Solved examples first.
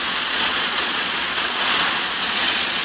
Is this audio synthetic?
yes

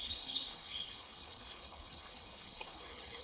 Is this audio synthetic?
yes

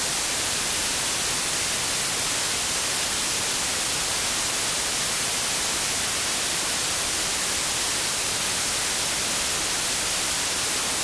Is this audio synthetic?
no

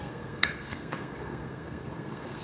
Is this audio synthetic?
yes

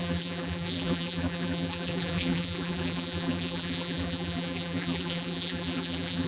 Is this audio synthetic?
yes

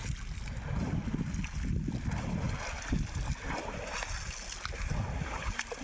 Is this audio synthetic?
no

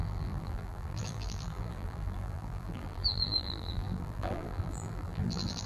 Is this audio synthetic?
yes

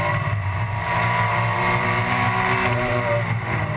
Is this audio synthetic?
yes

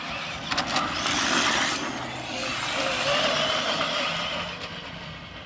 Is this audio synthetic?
no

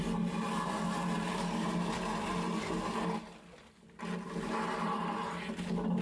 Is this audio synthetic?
no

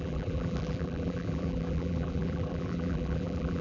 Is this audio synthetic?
yes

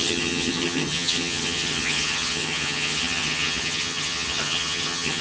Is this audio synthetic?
yes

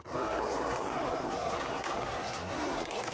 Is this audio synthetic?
yes